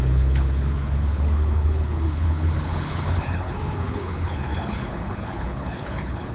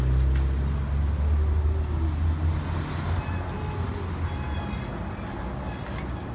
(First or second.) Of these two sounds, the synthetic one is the first